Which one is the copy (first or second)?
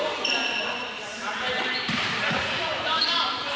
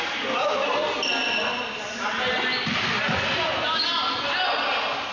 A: first